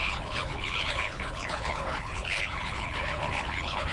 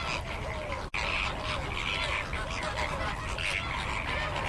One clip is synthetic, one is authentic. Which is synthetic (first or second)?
first